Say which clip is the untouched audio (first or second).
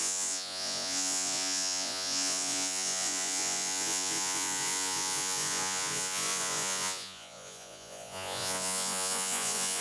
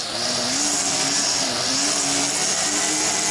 second